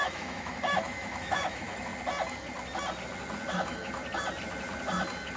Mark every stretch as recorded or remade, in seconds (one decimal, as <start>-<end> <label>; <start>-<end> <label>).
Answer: 0.0-1.9 remade; 1.9-3.5 recorded; 3.5-4.0 remade; 4.0-5.4 recorded